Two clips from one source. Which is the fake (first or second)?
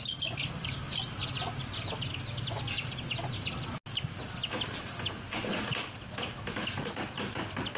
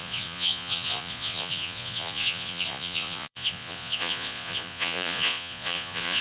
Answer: second